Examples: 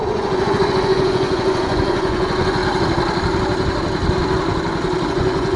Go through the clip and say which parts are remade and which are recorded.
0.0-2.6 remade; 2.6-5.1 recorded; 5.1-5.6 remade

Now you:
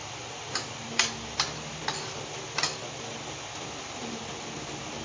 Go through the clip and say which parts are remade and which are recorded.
0.0-5.0 recorded

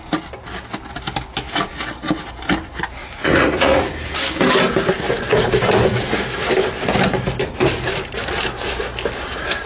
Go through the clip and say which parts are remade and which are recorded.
0.0-3.0 recorded; 3.0-3.9 remade; 3.9-9.7 recorded

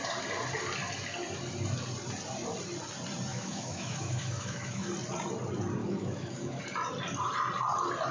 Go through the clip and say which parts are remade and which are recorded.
0.0-3.3 recorded; 3.3-4.9 remade; 4.9-5.8 recorded; 5.8-6.6 remade; 6.6-8.1 recorded

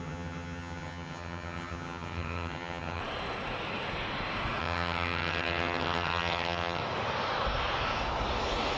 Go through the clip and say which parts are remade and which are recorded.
0.0-3.0 remade; 3.0-4.6 recorded; 4.6-6.8 remade; 6.8-8.8 recorded

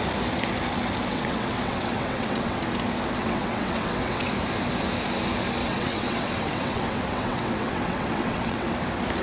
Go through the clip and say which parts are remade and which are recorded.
0.0-1.1 recorded; 1.1-2.6 remade; 2.6-3.2 recorded; 3.2-4.3 remade; 4.3-5.6 recorded; 5.6-8.7 remade; 8.7-9.2 recorded